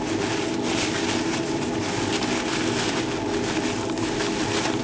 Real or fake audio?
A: real